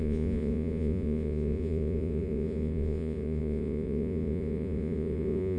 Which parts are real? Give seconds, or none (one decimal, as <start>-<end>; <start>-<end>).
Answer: none